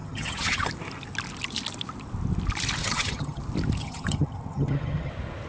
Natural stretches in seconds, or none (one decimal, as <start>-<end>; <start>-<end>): 0.7-2.8; 3.4-3.8; 5.1-5.5